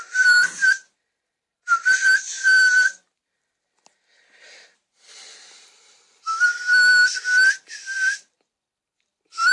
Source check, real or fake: fake